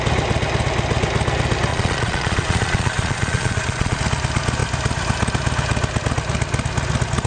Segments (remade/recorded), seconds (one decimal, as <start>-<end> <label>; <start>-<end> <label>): 0.0-1.7 recorded; 1.7-4.0 remade; 4.0-7.3 recorded